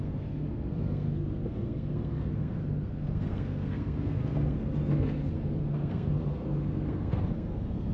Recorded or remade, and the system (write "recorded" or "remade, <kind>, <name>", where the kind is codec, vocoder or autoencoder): remade, codec, SNAC